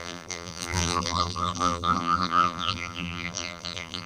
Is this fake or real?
fake